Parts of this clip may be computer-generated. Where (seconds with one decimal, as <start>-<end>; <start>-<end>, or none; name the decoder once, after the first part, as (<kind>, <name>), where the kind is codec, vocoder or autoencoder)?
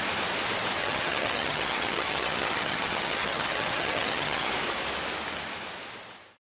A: 0.8-4.5 (vocoder, HiFi-GAN)